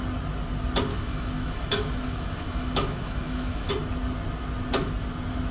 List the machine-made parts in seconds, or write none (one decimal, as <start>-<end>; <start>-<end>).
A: 0.9-3.7